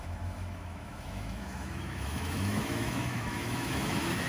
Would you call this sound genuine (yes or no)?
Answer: no